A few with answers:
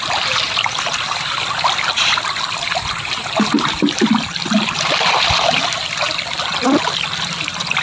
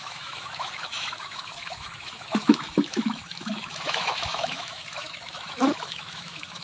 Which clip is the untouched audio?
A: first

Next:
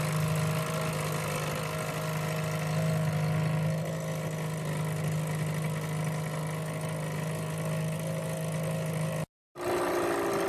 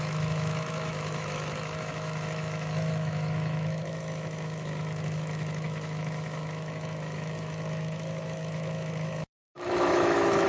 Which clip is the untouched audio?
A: first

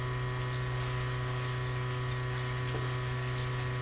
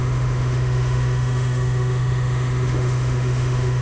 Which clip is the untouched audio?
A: first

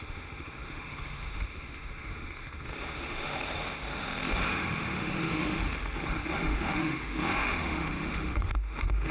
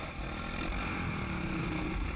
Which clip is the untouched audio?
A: second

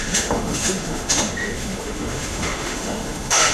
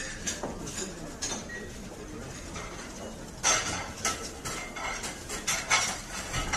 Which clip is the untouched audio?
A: second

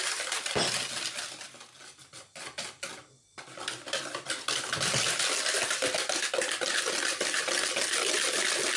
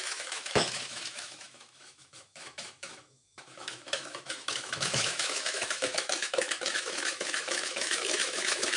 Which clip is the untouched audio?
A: first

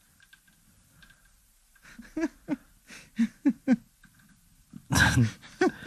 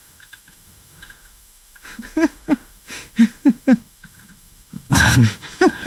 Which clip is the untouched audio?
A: first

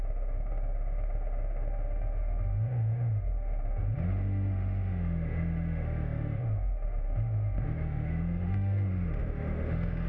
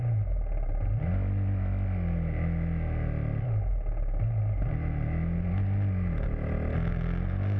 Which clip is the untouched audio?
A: second